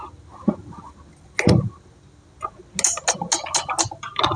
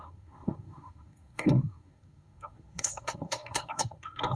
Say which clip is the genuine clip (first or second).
first